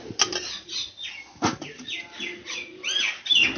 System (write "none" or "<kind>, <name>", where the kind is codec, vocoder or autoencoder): none